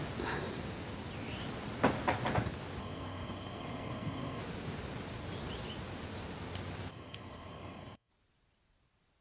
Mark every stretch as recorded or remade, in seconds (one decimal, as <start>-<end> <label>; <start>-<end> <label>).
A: 0.0-2.8 recorded; 2.8-4.4 remade; 4.4-6.9 recorded; 6.9-8.1 remade; 8.1-9.2 recorded

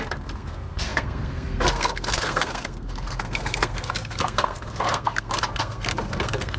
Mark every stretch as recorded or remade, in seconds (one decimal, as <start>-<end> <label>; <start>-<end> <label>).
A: 0.0-6.6 remade

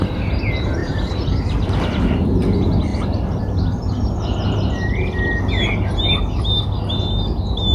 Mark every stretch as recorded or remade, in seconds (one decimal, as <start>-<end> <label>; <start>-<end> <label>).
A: 0.0-0.8 recorded; 0.8-2.0 remade; 2.0-2.9 recorded; 2.9-3.4 remade; 3.4-7.7 recorded

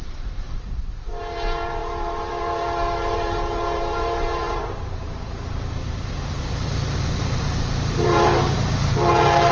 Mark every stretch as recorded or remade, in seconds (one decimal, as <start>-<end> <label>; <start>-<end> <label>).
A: 0.0-9.5 remade

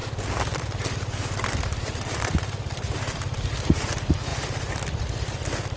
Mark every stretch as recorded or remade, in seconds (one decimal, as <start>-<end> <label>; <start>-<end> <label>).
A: 0.0-3.5 remade; 3.5-4.3 recorded; 4.3-5.0 remade; 5.0-5.8 recorded